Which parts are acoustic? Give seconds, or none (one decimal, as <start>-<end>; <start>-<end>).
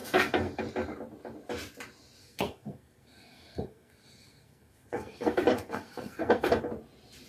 0.6-2.2; 6.6-7.3